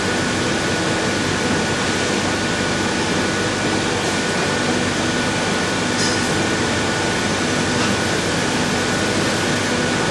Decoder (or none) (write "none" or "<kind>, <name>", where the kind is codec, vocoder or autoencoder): none